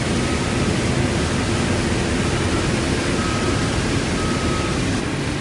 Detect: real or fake real